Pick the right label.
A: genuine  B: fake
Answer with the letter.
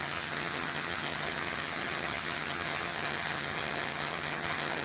B